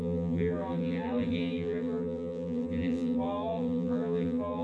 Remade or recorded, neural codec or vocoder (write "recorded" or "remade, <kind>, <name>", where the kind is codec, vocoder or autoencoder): remade, vocoder, BigVGAN v2